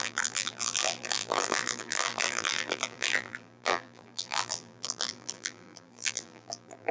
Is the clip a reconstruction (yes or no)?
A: yes